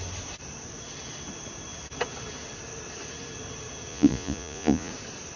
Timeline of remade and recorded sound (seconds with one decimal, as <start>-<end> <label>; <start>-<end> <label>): 0.0-3.9 recorded; 3.9-4.9 remade; 4.9-5.4 recorded